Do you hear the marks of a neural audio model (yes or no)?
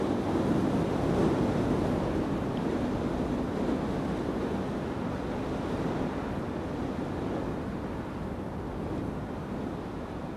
no